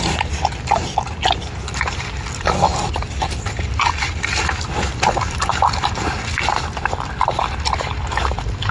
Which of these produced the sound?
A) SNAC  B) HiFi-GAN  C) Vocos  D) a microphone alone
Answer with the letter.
D